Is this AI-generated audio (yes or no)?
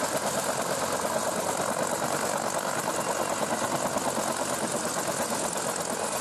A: no